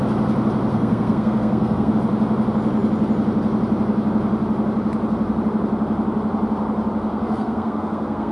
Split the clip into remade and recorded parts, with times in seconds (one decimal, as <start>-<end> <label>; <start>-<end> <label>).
0.0-0.7 recorded; 0.7-1.9 remade; 1.9-7.1 recorded; 7.1-8.3 remade